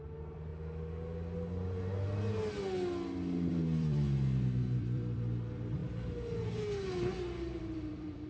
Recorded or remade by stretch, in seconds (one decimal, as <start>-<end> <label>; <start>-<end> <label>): 0.0-0.5 remade; 0.5-3.5 recorded; 3.5-5.8 remade; 5.8-7.6 recorded; 7.6-8.3 remade